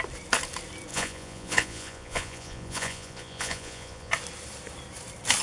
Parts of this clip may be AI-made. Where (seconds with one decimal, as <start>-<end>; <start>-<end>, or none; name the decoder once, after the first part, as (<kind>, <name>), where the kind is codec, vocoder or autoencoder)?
0.9-4.1 (vocoder, Vocos)